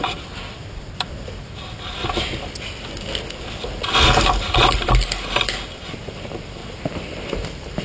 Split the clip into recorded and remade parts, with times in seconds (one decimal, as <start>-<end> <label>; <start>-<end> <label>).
0.0-7.8 recorded